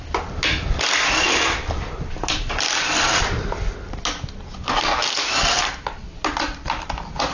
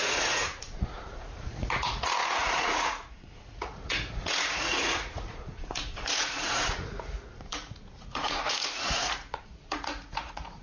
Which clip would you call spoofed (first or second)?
second